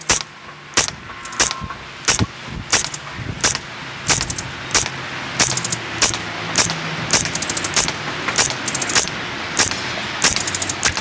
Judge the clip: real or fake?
real